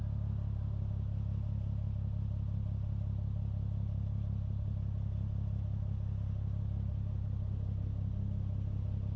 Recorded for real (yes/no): yes